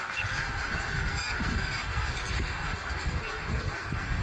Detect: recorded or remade remade